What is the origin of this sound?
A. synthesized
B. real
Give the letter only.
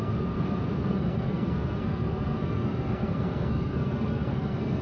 A